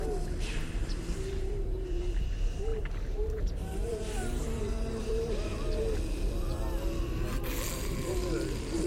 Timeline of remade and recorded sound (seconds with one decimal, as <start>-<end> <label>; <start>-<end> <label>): 0.0-5.5 remade; 5.5-7.7 recorded; 7.7-8.9 remade